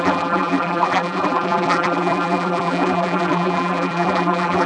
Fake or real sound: fake